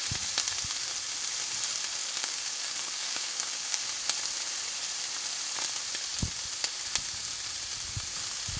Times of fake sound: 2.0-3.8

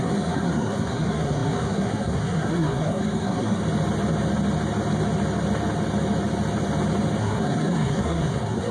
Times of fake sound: 0.0-3.6; 7.2-8.7

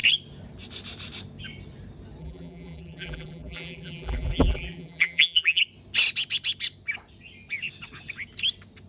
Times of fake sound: 2.2-5.6

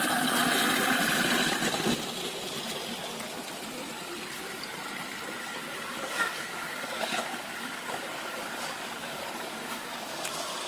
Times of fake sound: 5.6-10.7

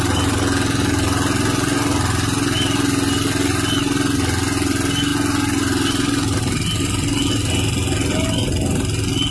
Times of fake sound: none